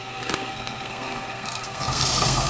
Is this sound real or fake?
fake